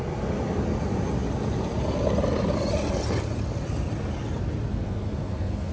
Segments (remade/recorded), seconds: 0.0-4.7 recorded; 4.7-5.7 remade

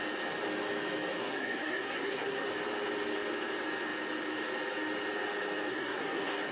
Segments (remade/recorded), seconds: 0.0-1.2 recorded; 1.2-2.5 remade; 2.5-5.7 recorded; 5.7-6.5 remade

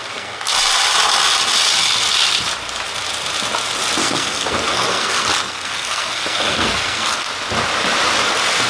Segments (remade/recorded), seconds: 0.0-0.5 remade; 0.5-4.0 recorded; 4.0-7.3 remade; 7.3-8.7 recorded

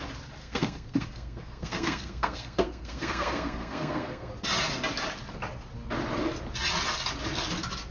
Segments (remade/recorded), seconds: 0.0-0.4 recorded; 0.4-4.3 remade; 4.3-7.9 recorded

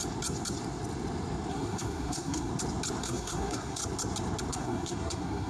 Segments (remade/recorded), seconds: 0.0-1.5 recorded; 1.5-2.5 remade; 2.5-3.0 recorded; 3.0-3.8 remade; 3.8-4.5 recorded; 4.5-5.5 remade

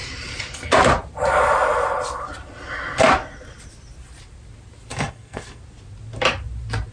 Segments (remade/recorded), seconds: 0.0-4.9 recorded; 4.9-5.6 remade; 5.6-6.9 recorded